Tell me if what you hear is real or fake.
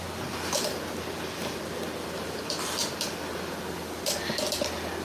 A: real